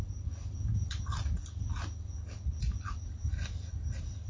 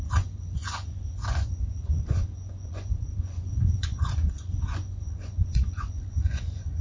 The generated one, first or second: second